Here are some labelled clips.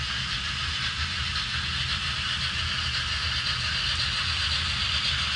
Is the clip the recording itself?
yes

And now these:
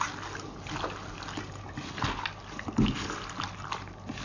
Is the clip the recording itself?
yes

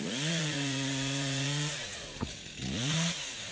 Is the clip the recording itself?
no